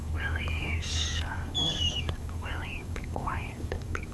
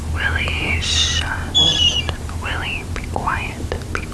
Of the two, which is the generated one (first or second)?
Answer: first